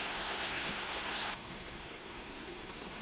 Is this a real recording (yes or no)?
no